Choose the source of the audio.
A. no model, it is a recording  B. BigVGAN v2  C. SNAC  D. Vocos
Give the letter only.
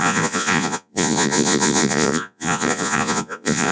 D